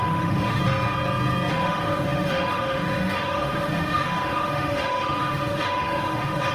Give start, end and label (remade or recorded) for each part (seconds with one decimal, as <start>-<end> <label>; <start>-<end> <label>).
0.0-0.6 remade; 0.6-1.5 recorded; 1.5-6.5 remade